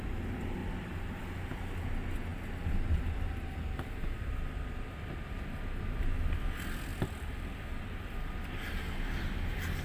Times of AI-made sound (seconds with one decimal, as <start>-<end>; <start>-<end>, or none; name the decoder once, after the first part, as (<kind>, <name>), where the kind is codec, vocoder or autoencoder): 0.6-1.2 (vocoder, BigVGAN v2); 6.9-7.8